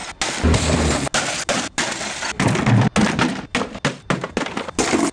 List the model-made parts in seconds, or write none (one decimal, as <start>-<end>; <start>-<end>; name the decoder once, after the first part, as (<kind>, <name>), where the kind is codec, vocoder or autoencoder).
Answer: none